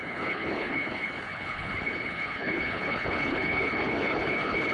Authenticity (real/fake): fake